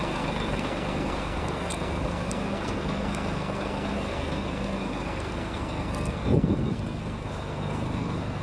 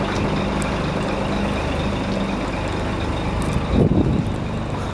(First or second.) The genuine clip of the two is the second